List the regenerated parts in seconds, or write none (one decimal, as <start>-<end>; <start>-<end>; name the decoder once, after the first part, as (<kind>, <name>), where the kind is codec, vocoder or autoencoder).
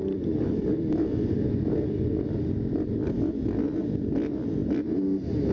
none